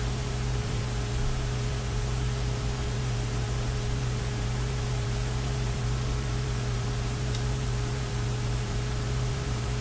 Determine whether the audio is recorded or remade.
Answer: remade